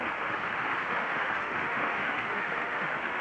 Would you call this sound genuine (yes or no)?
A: no